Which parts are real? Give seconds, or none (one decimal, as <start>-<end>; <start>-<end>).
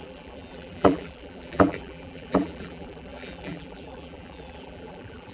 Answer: none